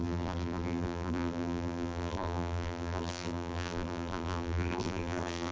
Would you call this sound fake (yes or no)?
yes